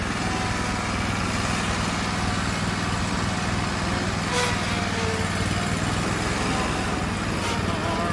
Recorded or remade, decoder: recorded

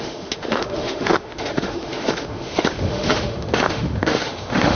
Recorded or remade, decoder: remade, autoencoder, DAC-VAE